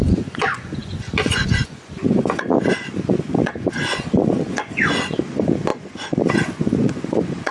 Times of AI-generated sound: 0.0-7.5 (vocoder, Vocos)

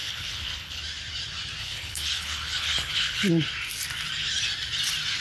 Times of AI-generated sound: 0.0-0.8 (codec, HILCodec); 1.6-3.3

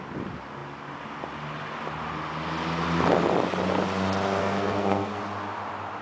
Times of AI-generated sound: 4.4-5.2 (codec, SNAC)